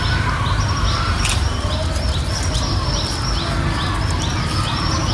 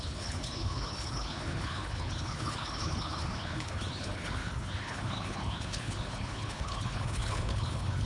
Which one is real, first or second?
first